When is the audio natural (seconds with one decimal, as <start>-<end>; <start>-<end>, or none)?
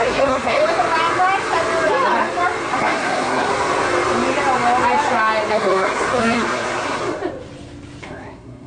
0.6-2.8; 3.5-5.5; 7.0-8.0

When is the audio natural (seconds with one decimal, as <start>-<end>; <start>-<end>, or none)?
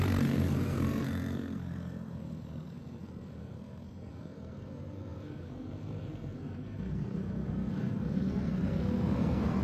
none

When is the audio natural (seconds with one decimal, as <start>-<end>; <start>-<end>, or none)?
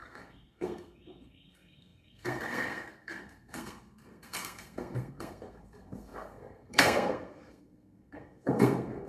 none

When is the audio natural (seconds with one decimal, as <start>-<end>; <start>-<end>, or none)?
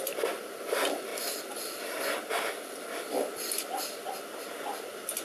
0.0-5.2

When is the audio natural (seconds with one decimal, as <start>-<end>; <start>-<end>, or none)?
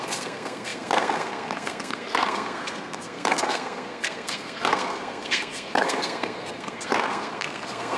none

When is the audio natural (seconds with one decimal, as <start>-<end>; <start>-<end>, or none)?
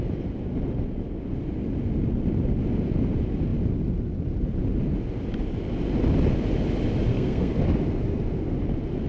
0.0-7.1; 7.6-9.1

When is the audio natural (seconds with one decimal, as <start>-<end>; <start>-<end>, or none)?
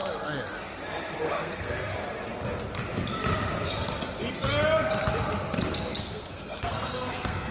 0.0-1.2; 1.9-6.0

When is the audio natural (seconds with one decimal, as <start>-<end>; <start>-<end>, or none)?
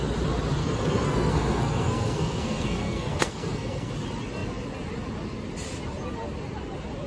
0.0-0.6; 3.9-7.1